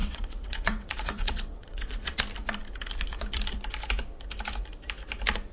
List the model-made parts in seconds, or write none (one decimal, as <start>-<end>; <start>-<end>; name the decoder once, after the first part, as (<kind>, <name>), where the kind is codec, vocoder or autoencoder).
0.0-2.2 (vocoder, WaveNeXt)